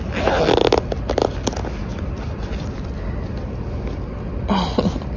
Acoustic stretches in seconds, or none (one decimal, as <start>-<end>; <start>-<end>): 0.0-1.9; 2.7-5.2